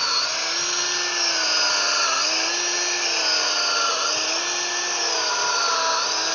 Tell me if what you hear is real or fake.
real